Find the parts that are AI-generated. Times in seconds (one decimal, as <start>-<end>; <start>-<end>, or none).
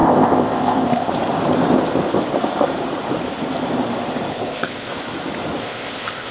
0.0-1.1; 4.3-4.9; 5.6-6.3